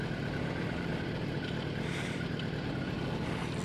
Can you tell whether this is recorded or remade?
recorded